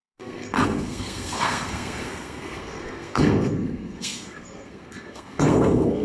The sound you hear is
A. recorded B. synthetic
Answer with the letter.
B